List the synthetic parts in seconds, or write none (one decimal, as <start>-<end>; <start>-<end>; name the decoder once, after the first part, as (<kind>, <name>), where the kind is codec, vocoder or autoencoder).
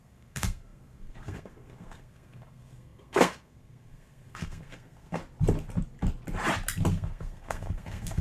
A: 0.0-5.2 (codec, SNAC); 6.9-8.2